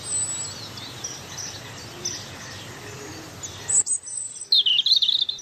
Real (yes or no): yes